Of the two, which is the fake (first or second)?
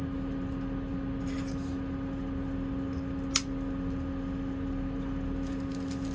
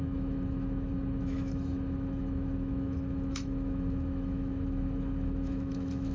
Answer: second